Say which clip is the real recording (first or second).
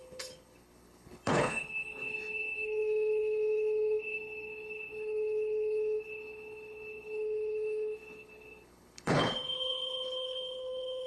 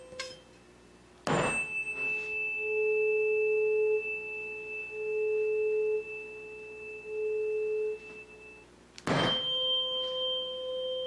second